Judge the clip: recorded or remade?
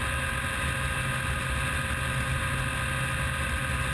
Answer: recorded